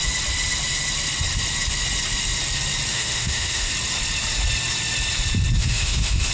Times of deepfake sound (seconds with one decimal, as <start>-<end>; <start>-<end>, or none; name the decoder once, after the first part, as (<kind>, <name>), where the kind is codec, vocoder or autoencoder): 2.9-3.7 (autoencoder, DAC-VAE); 5.6-6.3